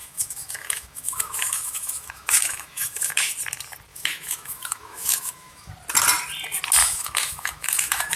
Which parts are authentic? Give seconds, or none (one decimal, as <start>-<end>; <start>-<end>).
3.3-3.9; 5.7-6.8

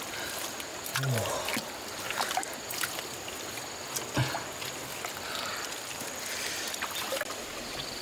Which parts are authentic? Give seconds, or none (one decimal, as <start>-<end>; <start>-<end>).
0.0-8.0

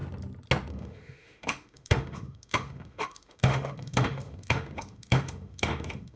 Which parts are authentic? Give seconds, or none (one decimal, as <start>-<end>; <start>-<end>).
0.0-0.7

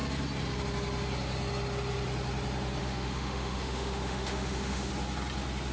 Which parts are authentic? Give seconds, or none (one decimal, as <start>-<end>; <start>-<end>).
0.0-2.8; 4.9-5.7